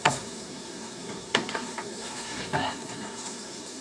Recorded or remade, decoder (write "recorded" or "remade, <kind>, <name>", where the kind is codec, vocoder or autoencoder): remade, codec, SNAC